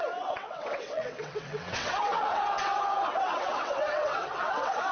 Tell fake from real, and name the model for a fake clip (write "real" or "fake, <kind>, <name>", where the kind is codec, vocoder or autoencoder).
fake, vocoder, WaveNeXt